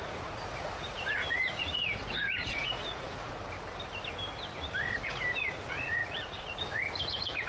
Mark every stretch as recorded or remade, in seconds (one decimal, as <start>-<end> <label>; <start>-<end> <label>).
0.0-3.4 remade; 3.4-5.6 recorded; 5.6-7.5 remade